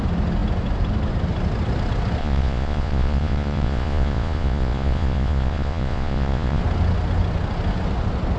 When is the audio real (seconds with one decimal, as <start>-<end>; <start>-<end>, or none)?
0.0-2.2; 6.6-8.4